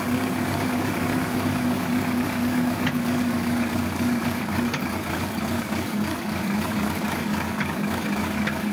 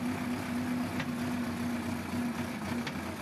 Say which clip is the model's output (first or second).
first